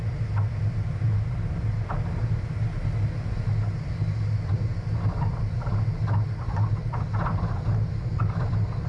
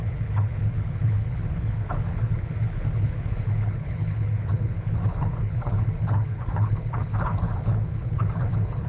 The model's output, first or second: second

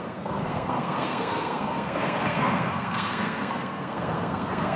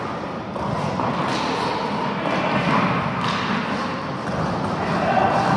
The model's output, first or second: first